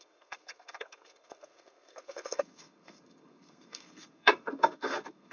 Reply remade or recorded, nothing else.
remade